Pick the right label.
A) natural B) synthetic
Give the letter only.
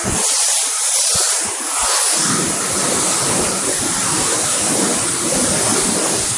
A